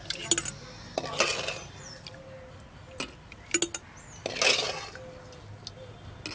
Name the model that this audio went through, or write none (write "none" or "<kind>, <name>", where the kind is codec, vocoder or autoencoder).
none